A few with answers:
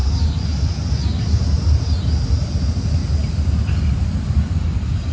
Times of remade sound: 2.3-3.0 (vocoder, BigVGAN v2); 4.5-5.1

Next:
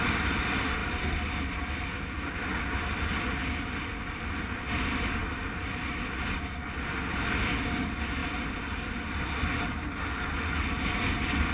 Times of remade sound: none